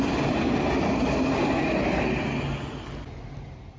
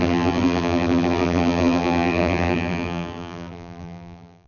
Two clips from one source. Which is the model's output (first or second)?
second